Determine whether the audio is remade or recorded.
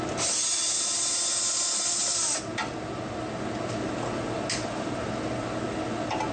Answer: recorded